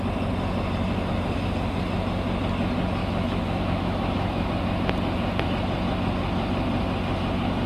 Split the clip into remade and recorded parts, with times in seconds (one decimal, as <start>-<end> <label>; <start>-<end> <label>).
0.0-3.0 recorded; 3.0-4.5 remade; 4.5-7.7 recorded